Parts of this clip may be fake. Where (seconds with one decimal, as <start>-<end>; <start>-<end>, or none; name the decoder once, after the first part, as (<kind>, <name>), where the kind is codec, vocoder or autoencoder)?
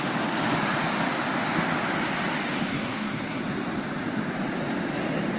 2.7-3.4 (codec, SNAC)